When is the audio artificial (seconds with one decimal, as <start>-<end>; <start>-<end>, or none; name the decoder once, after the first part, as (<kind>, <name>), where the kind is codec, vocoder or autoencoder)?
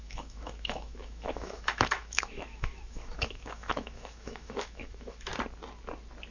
0.0-5.3 (autoencoder, DAC-VAE)